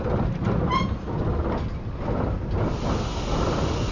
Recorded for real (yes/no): yes